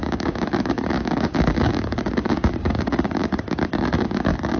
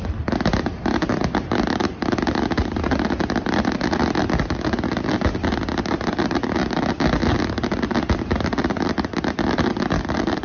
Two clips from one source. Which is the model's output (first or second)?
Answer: first